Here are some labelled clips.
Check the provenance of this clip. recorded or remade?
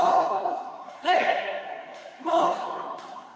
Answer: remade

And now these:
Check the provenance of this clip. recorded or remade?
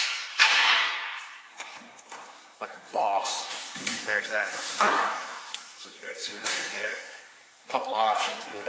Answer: remade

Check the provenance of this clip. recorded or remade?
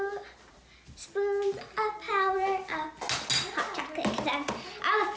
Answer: recorded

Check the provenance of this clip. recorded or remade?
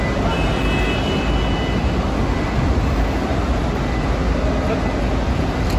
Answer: recorded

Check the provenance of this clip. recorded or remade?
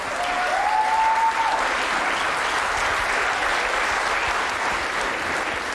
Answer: recorded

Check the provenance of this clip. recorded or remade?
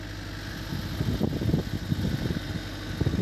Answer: recorded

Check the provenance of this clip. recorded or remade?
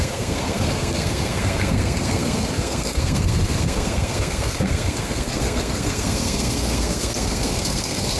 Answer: remade